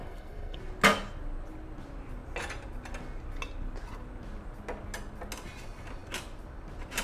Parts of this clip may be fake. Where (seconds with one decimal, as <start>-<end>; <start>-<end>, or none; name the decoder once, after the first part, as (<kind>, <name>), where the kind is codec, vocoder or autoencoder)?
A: 0.0-0.6 (codec, SNAC)